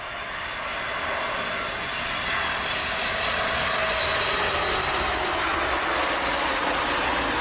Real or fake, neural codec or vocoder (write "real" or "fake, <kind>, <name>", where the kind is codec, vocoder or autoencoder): real